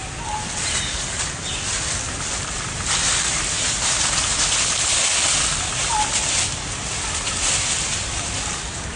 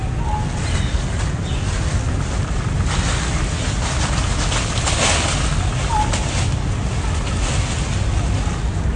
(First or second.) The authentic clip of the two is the second